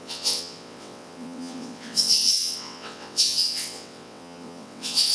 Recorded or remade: remade